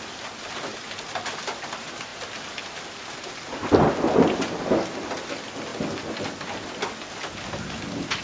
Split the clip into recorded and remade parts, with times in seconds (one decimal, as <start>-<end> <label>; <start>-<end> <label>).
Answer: 0.0-8.2 recorded

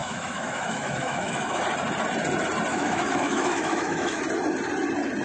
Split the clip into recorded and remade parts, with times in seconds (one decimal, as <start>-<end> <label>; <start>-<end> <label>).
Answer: 0.0-1.6 remade; 1.6-2.7 recorded; 2.7-4.2 remade; 4.2-5.2 recorded